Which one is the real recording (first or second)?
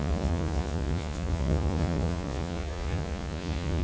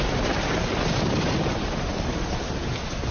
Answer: second